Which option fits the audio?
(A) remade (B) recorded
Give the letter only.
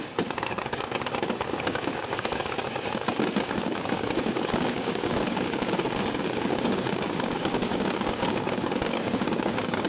A